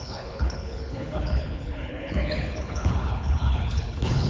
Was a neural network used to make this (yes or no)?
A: yes